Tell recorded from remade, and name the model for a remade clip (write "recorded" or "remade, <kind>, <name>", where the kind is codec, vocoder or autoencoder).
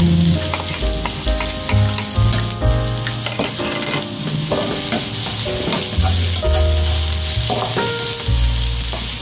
recorded